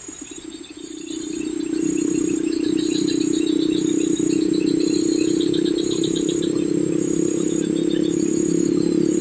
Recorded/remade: remade